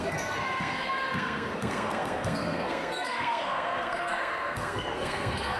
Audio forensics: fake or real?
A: fake